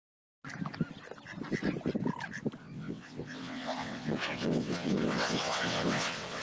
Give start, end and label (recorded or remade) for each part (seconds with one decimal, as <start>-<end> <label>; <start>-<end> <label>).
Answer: 0.0-2.6 recorded; 2.6-6.4 remade